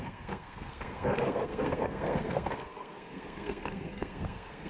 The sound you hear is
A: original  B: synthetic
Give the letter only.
B